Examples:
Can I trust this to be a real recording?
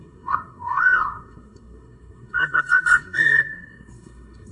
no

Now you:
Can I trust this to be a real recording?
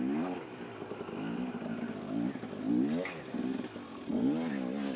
yes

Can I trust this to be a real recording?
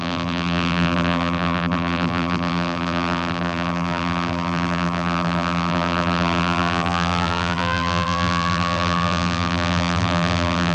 no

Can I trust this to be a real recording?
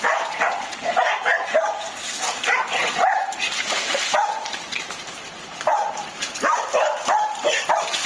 no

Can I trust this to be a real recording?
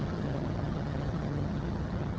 no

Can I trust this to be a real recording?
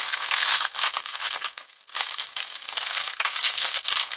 no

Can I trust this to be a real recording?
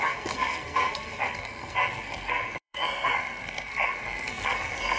no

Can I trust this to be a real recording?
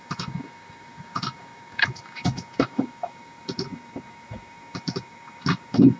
no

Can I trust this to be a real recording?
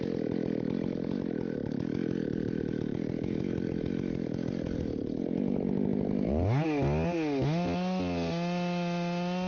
yes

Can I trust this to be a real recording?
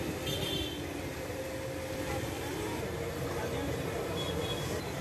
yes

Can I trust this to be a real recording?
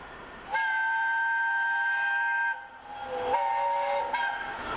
yes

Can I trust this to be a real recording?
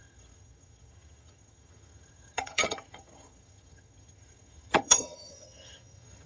no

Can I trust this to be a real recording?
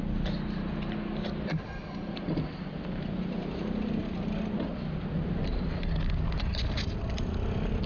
yes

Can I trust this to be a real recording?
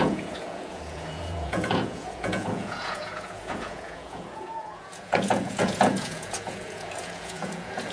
no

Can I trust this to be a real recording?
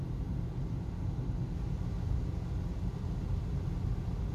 yes